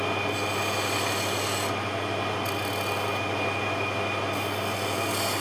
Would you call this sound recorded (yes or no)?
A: yes